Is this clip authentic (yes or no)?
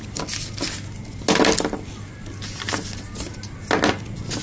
yes